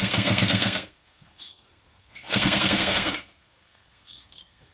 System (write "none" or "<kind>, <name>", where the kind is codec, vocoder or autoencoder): codec, SNAC